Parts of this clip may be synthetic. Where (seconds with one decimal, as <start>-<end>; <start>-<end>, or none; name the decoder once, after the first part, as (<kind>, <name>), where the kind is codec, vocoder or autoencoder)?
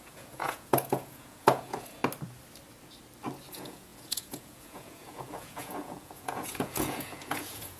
0.0-2.0 (vocoder, Vocos); 3.5-7.8